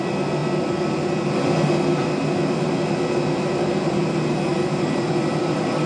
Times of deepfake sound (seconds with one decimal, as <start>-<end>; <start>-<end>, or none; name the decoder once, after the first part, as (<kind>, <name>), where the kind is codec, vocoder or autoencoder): 4.5-5.9 (vocoder, BigVGAN v2)